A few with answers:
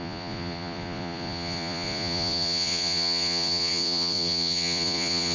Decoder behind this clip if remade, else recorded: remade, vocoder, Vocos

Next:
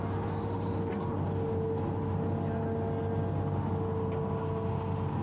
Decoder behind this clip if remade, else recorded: recorded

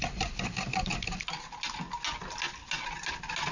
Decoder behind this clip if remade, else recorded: recorded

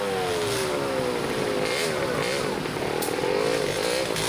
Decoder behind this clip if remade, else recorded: recorded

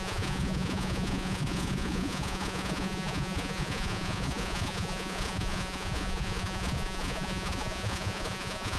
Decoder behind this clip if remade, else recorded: remade, vocoder, Vocos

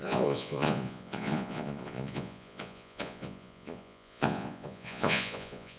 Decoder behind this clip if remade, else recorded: remade, vocoder, Vocos